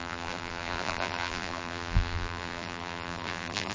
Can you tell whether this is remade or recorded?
remade